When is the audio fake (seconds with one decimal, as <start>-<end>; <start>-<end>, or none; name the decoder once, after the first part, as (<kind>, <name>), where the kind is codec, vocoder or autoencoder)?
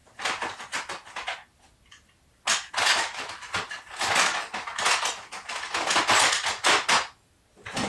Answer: none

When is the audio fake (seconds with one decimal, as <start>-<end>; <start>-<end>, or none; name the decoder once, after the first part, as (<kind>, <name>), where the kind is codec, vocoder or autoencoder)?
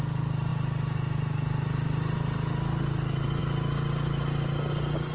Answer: none